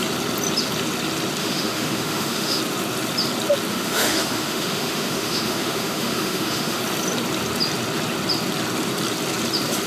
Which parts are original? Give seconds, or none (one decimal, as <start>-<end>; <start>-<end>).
0.0-1.4; 2.6-3.7; 6.8-9.9